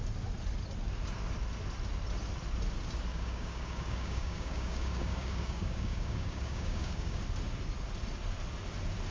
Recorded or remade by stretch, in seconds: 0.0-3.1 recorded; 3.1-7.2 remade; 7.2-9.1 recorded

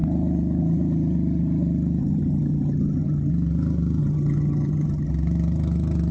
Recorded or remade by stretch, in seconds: 0.0-2.0 recorded; 2.0-3.3 remade; 3.3-4.0 recorded; 4.0-5.1 remade; 5.1-6.1 recorded

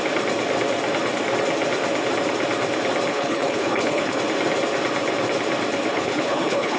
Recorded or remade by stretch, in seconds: 0.0-3.1 recorded; 3.1-4.2 remade; 4.2-5.9 recorded; 5.9-6.8 remade

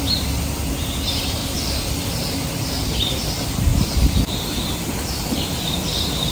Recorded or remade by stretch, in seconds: 0.0-1.4 recorded; 1.4-2.6 remade; 2.6-3.7 recorded; 3.7-6.3 remade

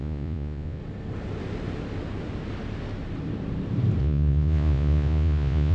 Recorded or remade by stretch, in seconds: 0.0-0.8 remade; 0.8-4.0 recorded; 4.0-5.7 remade

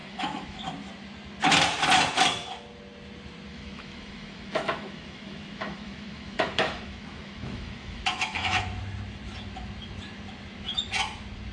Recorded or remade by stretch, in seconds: 0.0-0.6 remade; 0.6-3.5 recorded; 3.5-8.6 remade; 8.6-11.5 recorded